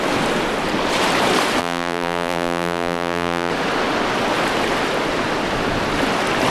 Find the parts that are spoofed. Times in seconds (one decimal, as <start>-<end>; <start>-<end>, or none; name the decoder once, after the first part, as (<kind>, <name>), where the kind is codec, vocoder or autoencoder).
1.6-3.5 (vocoder, BigVGAN v2)